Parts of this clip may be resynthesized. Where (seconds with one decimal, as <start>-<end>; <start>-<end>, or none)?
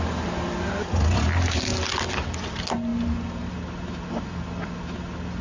none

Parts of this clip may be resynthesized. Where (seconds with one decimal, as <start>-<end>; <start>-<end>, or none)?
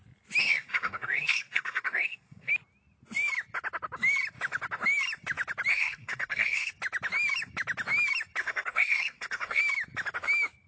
0.4-2.5; 5.7-6.7; 8.4-9.6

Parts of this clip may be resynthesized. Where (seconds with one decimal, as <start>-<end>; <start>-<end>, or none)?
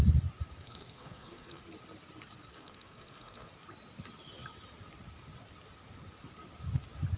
0.6-1.6; 2.5-3.5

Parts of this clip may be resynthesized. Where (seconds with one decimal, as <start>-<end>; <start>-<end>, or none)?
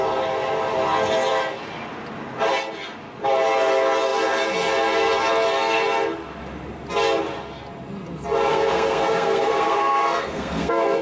8.5-11.0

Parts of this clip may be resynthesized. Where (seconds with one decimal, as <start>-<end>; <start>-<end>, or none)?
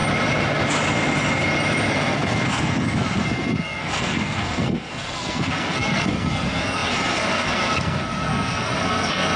1.9-9.4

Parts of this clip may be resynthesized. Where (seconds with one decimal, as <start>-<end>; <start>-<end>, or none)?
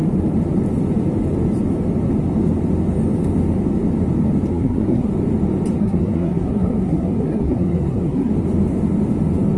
4.5-5.1; 5.8-8.3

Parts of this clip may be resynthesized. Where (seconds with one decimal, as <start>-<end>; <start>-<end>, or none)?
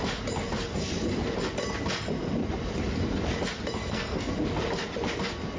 3.8-4.3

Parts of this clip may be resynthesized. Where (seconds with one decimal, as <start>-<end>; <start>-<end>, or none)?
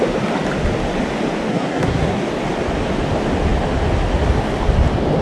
1.5-2.2